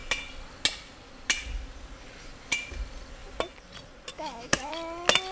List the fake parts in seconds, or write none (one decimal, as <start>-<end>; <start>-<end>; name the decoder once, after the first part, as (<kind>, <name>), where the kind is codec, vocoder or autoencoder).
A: 4.1-4.7 (autoencoder, DAC-VAE)